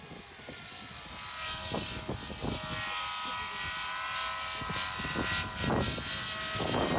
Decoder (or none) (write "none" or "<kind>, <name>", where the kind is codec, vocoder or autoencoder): none